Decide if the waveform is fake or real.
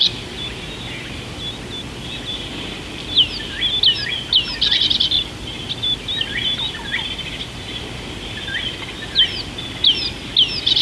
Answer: real